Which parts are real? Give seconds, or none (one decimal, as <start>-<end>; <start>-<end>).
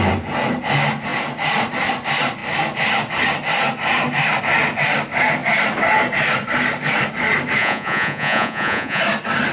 0.0-7.6; 9.0-9.5